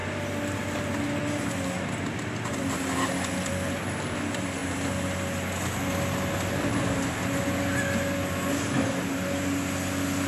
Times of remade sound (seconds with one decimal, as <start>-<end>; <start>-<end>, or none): none